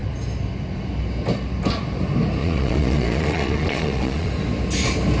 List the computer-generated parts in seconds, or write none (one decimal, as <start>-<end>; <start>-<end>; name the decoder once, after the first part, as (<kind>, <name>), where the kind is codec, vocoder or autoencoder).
2.4-4.3 (vocoder, Vocos)